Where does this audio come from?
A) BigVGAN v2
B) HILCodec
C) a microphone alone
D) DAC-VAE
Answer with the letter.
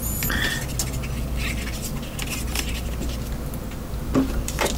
C